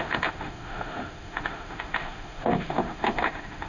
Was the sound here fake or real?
fake